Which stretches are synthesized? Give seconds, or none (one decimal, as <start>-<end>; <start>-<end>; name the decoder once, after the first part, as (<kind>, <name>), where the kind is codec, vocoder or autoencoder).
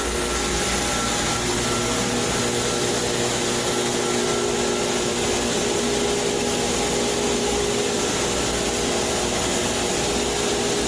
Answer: none